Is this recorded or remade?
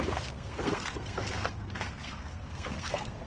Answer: remade